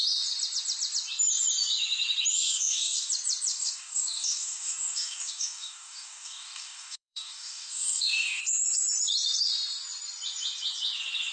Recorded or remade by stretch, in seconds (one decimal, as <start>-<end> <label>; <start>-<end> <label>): 0.0-2.3 recorded; 2.3-3.1 remade; 3.1-3.5 recorded; 3.5-8.4 remade; 8.4-11.3 recorded